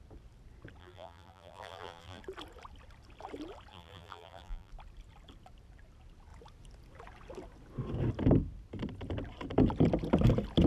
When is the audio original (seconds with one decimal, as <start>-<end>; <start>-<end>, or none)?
0.0-0.8; 2.2-3.7; 4.7-10.7